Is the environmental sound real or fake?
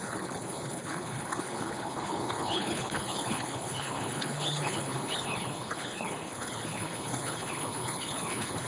fake